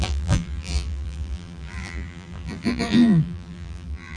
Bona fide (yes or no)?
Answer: no